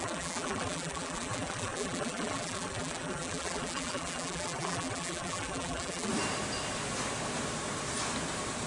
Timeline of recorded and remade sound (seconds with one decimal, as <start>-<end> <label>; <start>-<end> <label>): 0.0-6.1 remade; 6.1-8.7 recorded